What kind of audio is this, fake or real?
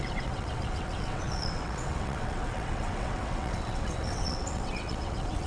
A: fake